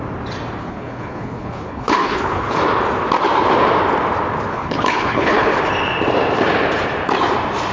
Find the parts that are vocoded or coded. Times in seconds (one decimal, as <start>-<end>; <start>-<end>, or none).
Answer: 0.6-2.6; 4.5-5.5

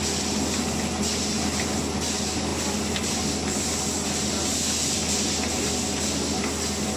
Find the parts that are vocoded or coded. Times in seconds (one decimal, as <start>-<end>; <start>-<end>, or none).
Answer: none

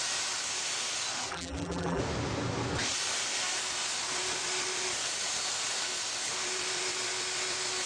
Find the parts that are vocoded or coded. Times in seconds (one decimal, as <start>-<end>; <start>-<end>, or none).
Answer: 1.3-2.0

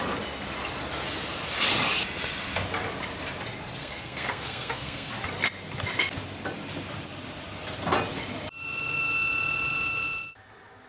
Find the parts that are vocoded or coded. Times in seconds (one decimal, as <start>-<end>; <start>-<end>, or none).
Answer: 3.8-5.1

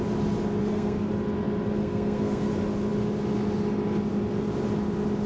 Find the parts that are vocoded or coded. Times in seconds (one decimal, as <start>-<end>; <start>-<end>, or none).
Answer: 0.6-1.1; 1.8-2.5